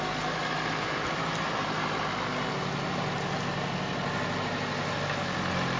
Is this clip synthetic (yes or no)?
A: no